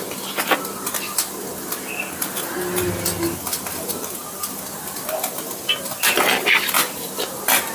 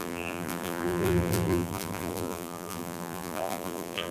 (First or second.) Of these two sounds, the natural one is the first